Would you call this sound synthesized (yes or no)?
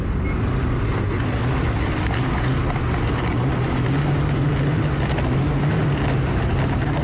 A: no